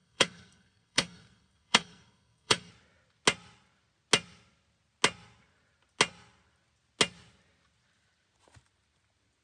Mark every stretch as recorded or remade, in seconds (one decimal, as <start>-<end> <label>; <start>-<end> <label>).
0.0-2.7 remade; 2.7-9.4 recorded